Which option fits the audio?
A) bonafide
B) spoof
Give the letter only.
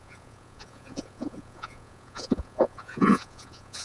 B